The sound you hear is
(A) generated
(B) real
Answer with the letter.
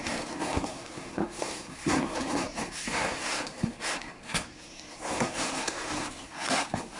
A